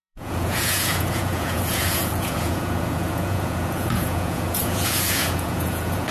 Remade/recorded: remade